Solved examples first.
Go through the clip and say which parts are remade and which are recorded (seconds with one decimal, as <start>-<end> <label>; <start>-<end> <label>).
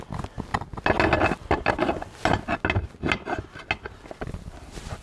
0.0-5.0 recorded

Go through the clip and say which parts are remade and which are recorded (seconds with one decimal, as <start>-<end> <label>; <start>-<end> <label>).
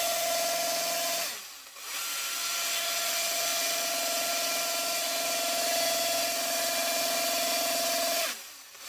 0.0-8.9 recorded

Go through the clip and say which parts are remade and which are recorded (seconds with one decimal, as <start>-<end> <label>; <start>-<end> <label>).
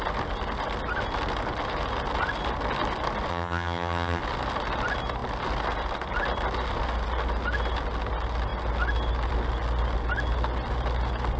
0.0-3.3 recorded; 3.3-4.2 remade; 4.2-11.4 recorded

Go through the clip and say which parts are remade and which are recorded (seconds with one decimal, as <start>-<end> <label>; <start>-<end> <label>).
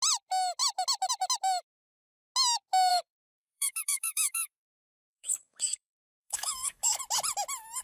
0.0-2.9 recorded; 2.9-7.0 remade; 7.0-7.8 recorded